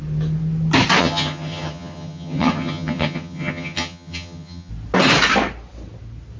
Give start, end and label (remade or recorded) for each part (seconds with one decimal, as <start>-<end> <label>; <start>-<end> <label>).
0.0-1.0 recorded; 1.0-4.7 remade; 4.7-6.4 recorded